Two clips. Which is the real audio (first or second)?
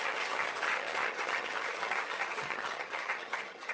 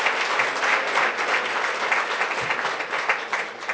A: second